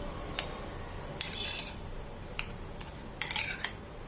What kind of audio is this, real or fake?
fake